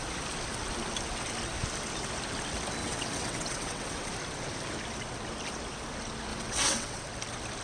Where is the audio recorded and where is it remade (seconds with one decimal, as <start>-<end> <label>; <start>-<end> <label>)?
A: 0.0-2.8 recorded; 2.8-4.1 remade; 4.1-6.3 recorded; 6.3-7.0 remade; 7.0-7.6 recorded